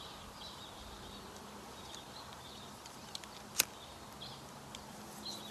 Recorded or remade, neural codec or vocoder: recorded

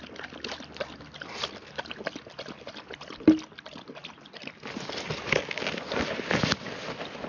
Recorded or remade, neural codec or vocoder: recorded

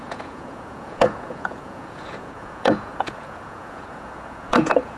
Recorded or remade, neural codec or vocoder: remade, vocoder, Vocos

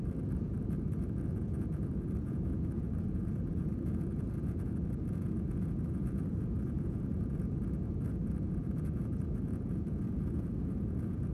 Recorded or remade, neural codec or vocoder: remade, vocoder, Vocos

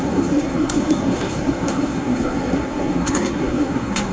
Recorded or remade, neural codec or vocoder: remade, codec, SNAC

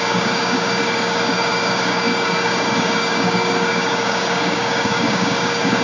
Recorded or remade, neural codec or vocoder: remade, codec, DAC